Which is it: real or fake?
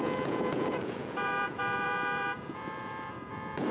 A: fake